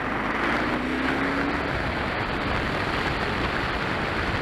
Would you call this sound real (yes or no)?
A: yes